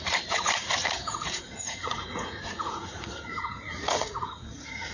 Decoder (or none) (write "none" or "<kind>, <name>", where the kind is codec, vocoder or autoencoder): vocoder, Vocos